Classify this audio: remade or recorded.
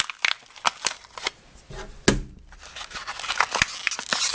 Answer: recorded